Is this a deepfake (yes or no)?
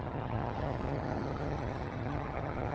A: yes